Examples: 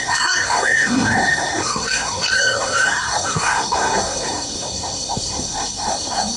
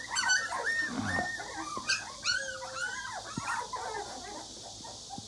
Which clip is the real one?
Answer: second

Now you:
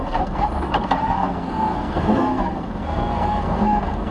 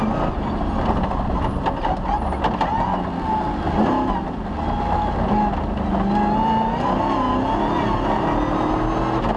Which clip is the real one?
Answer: second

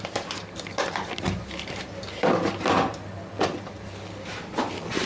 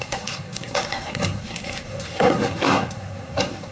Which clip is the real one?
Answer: first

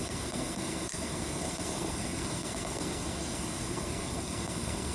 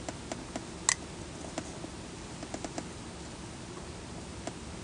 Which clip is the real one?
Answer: second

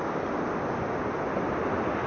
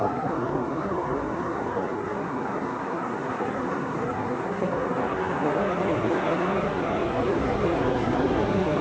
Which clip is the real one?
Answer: first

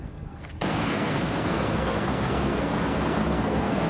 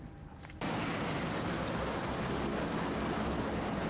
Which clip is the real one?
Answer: second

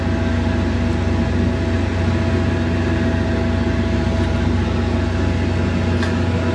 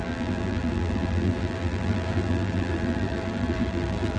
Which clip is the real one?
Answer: first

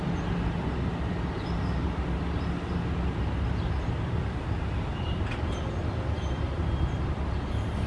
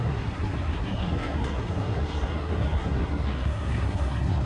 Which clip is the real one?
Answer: first